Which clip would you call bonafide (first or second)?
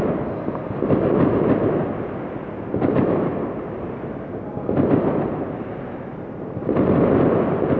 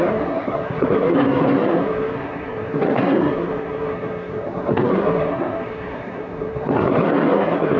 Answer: first